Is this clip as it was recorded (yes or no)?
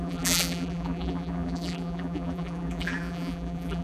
no